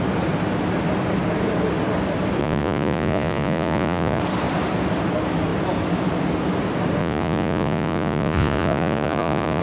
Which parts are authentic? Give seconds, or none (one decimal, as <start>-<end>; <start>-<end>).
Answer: 0.0-2.4; 4.2-7.0